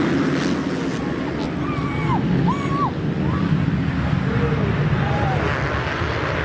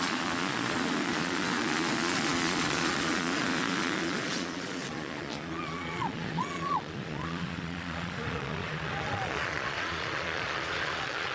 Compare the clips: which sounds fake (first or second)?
second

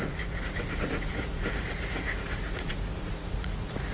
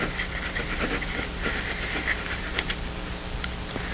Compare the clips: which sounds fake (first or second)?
first